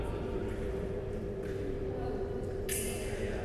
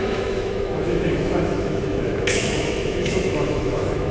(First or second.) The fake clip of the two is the second